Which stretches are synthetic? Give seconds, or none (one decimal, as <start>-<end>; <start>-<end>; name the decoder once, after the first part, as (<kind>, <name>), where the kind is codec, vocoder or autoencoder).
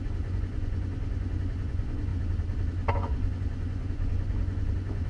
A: 0.0-2.1 (vocoder, Vocos); 2.9-5.1